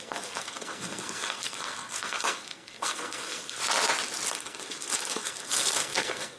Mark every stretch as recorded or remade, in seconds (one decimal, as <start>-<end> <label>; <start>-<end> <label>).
0.0-3.6 remade; 3.6-4.3 recorded; 4.3-6.4 remade